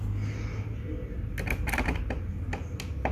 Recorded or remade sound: recorded